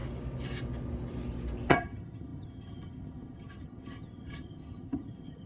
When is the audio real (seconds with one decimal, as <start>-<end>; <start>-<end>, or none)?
0.0-1.7